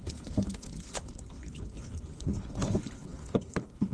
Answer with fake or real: fake